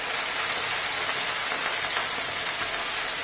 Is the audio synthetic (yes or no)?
no